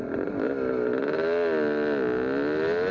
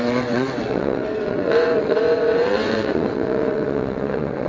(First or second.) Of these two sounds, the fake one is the second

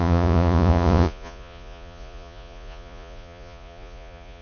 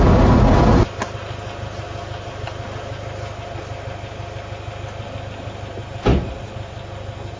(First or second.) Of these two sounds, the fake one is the first